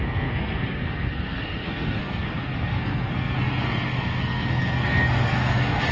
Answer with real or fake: fake